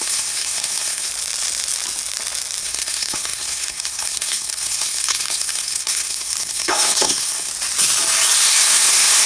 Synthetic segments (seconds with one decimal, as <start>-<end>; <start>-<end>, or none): 0.0-1.1; 2.6-7.5; 8.4-9.3